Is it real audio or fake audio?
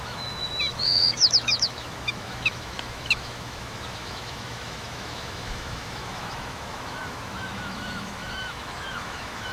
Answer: fake